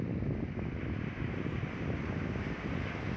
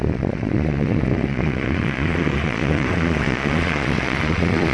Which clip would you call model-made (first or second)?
second